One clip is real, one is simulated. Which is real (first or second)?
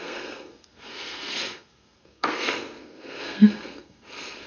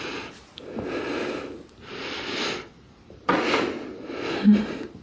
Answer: second